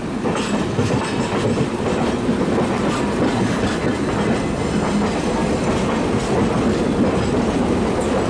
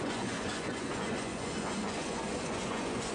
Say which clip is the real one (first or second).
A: first